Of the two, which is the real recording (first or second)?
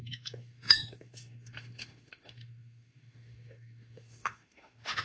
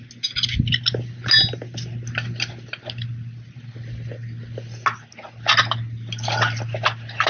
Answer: second